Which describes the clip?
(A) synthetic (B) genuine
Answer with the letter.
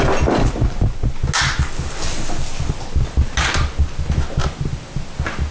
B